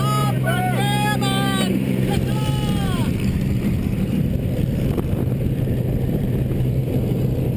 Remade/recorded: remade